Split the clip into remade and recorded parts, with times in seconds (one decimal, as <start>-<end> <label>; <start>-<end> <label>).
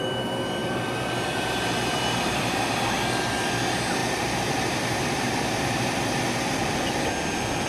0.0-0.6 recorded; 0.6-3.3 remade; 3.3-4.0 recorded; 4.0-6.2 remade; 6.2-7.7 recorded